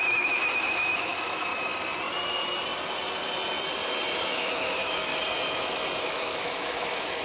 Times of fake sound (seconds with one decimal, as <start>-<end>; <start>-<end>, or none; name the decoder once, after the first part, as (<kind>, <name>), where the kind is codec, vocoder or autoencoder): 0.0-1.5 (autoencoder, DAC-VAE); 4.2-5.1; 6.0-7.2